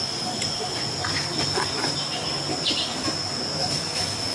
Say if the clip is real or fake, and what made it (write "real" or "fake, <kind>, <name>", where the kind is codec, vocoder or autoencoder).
real